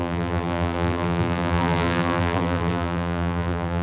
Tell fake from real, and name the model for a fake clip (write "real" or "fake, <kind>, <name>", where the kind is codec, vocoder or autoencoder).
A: fake, vocoder, BigVGAN v2